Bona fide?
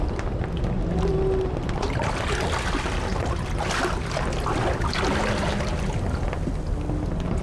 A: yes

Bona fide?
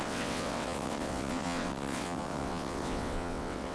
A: no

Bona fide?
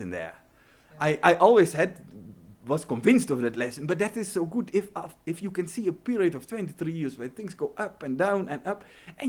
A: yes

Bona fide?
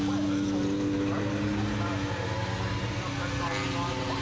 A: yes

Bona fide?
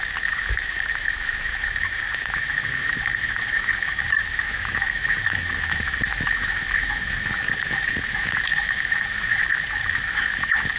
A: no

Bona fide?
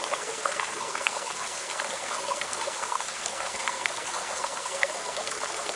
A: no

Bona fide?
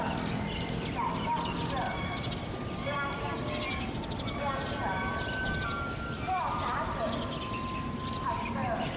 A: yes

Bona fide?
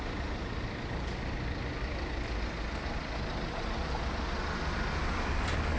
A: yes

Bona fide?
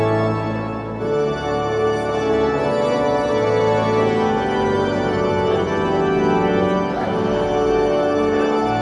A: yes